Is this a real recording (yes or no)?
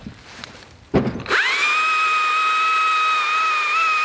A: yes